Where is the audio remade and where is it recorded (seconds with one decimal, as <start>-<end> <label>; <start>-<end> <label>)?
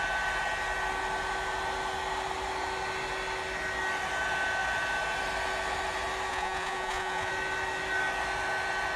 0.0-6.3 recorded; 6.3-7.3 remade; 7.3-9.0 recorded